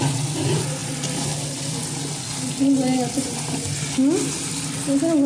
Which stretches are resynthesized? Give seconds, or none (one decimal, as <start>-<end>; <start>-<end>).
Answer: none